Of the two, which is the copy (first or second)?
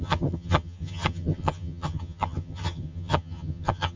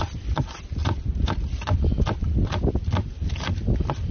first